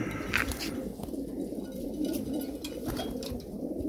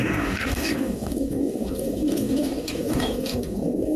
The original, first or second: first